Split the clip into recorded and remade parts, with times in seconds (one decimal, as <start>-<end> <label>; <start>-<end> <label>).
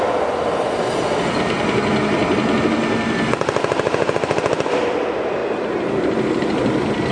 0.0-7.1 recorded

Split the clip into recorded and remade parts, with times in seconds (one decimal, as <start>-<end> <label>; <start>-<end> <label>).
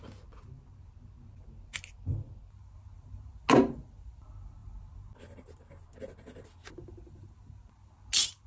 0.0-8.5 recorded